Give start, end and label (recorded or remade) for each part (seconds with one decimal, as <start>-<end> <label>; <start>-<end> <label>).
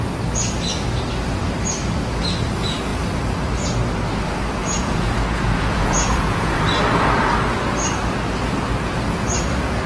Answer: 0.0-4.6 recorded; 4.6-6.6 remade; 6.6-9.9 recorded